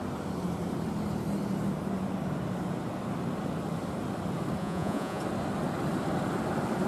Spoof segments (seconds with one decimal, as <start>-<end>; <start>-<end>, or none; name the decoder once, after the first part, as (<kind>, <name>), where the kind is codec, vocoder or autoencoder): 4.6-5.2 (vocoder, Vocos)